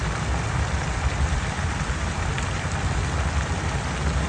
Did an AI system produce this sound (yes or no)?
no